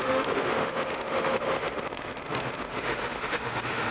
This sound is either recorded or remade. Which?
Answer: remade